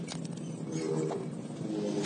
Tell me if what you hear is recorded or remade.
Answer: recorded